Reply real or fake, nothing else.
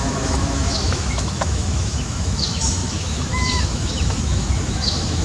fake